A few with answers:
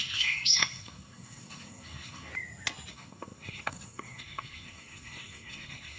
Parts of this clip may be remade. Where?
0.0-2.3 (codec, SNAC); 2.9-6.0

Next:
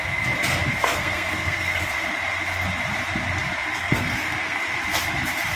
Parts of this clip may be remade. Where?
0.7-1.8 (codec, SNAC); 3.8-4.6

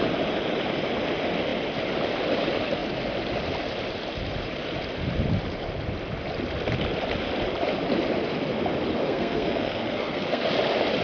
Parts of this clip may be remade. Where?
9.0-10.5 (codec, SNAC)

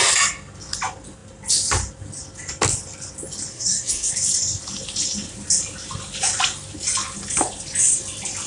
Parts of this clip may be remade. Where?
3.5-4.1 (codec, SNAC)

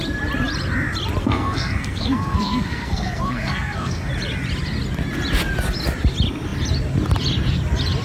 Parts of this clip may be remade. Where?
1.2-4.1 (codec, SNAC)

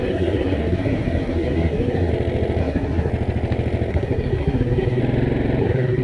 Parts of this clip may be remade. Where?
0.0-2.1 (codec, SNAC); 2.6-3.1; 3.9-5.0; 5.6-6.0

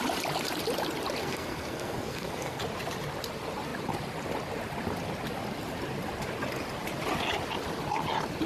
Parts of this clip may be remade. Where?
1.2-2.6 (codec, SNAC)

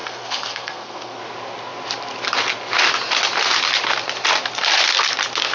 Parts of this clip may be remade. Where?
0.0-1.2 (codec, SNAC)